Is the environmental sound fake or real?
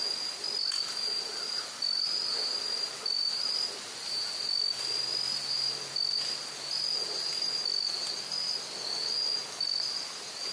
real